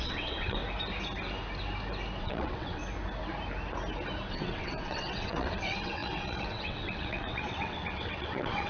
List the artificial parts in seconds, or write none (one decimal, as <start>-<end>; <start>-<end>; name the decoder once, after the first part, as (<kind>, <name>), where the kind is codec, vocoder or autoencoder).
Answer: 0.0-0.6 (vocoder, WaveNeXt); 2.2-2.8; 4.3-8.7